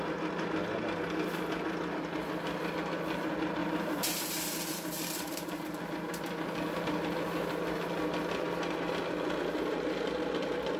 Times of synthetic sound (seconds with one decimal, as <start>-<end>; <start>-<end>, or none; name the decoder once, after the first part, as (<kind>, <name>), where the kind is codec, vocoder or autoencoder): 3.6-5.8 (vocoder, BigVGAN v2)